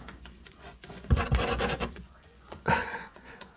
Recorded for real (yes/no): no